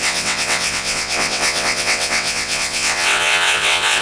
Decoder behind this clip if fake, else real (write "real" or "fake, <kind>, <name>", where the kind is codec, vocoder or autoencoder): fake, vocoder, WaveNeXt